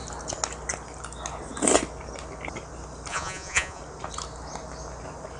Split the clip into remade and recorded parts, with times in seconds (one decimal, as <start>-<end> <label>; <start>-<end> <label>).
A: 0.0-3.1 recorded; 3.1-3.8 remade; 3.8-5.4 recorded